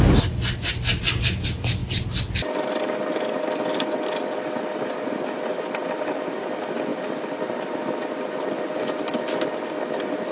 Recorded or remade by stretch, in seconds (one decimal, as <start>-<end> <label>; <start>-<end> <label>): 0.0-10.3 recorded